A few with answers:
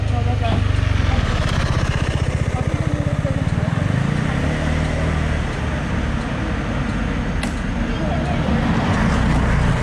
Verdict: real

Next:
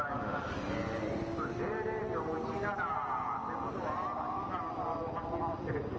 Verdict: real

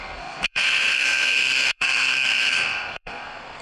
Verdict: fake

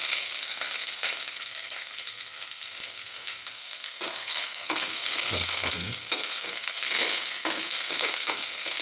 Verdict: fake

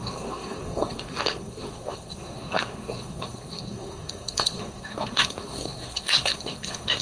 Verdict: fake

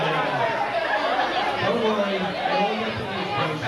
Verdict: real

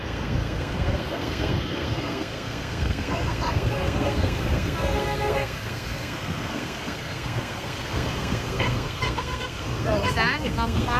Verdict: fake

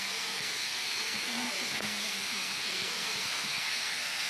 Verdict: fake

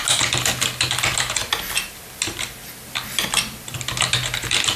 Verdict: real